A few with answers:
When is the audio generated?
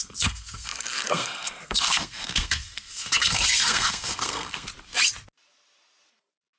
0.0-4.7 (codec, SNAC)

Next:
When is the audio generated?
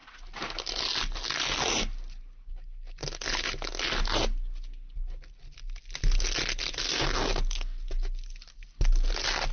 none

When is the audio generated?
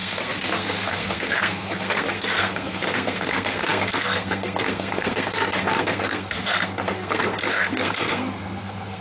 0.0-9.0 (codec, SNAC)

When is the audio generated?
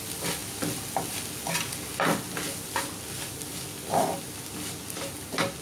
none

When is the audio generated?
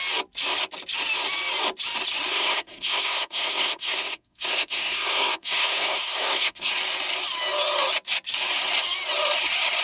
2.3-6.7 (codec, SNAC)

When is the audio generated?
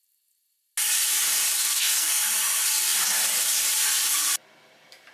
1.6-2.2 (codec, SNAC)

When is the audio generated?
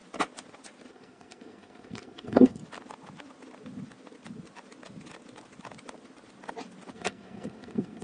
0.9-2.6 (codec, SNAC); 6.9-8.0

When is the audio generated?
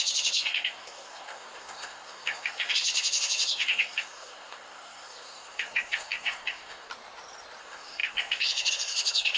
0.0-6.9 (codec, SNAC); 7.6-9.4